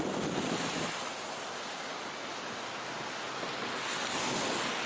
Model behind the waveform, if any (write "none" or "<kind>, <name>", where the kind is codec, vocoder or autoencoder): none